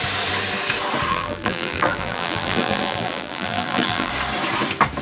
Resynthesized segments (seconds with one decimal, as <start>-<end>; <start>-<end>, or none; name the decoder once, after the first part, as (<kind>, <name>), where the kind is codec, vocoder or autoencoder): 1.1-4.1 (vocoder, BigVGAN v2)